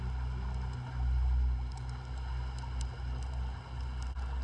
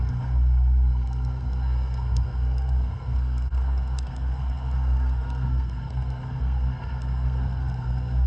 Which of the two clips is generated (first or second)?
second